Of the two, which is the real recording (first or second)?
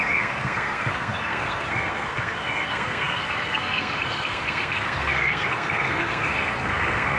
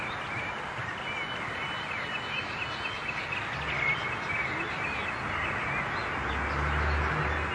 second